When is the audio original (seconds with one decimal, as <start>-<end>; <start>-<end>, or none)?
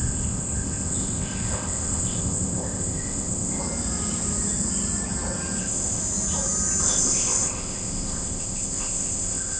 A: 3.6-5.6; 6.0-6.8